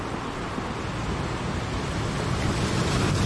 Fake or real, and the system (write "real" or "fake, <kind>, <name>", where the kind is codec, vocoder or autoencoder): real